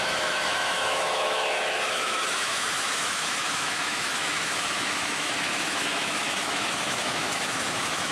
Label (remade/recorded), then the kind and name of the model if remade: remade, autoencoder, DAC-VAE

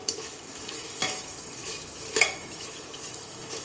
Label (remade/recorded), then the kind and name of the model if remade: remade, autoencoder, DAC-VAE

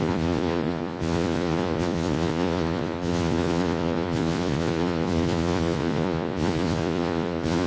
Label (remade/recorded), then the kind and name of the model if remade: remade, vocoder, Vocos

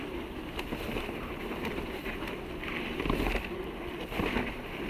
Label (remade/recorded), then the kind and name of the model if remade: remade, vocoder, BigVGAN v2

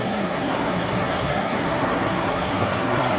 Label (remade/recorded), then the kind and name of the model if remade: remade, codec, SNAC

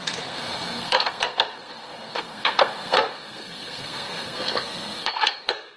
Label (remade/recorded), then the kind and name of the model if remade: remade, codec, SNAC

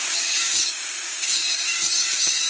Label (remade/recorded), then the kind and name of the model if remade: remade, codec, DAC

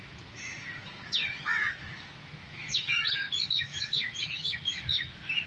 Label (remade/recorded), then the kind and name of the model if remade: remade, autoencoder, DAC-VAE